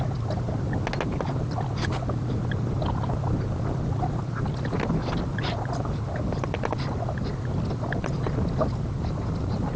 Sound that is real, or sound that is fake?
real